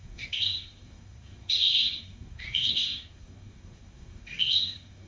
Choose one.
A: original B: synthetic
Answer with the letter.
B